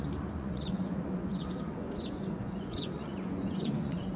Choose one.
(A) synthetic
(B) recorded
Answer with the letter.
A